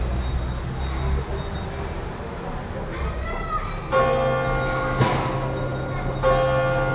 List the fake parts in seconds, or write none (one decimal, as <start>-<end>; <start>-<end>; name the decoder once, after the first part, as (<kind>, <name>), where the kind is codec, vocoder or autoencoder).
none